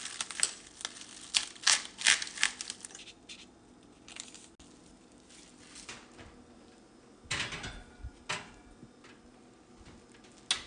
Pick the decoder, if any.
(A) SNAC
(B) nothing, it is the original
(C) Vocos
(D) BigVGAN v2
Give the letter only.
B